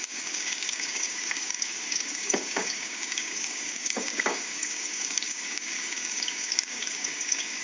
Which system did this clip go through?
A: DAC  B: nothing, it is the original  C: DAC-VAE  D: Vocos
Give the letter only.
A